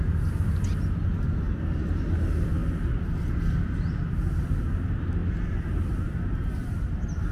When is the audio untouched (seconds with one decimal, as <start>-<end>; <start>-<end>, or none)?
0.0-7.3